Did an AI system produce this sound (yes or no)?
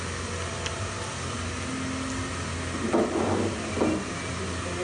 no